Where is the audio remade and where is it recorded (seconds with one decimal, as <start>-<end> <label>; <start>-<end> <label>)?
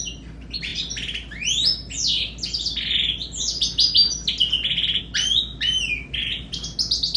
0.0-7.2 recorded